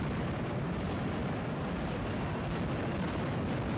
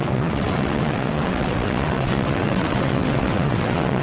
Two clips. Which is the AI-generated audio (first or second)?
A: second